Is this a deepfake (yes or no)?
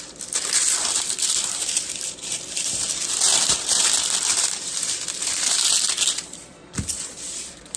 yes